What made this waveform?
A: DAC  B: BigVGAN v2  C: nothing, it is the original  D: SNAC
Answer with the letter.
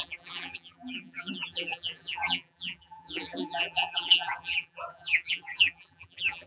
B